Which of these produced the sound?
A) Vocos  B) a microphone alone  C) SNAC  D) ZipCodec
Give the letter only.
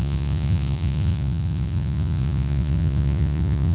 A